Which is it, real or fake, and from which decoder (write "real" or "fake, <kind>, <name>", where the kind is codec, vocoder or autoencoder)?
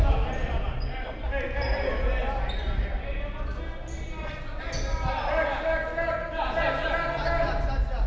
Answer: real